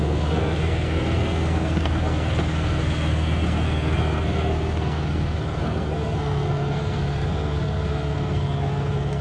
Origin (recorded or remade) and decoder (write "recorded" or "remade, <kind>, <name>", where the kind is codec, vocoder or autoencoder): remade, codec, SNAC